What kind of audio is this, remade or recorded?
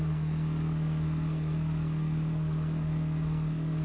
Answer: remade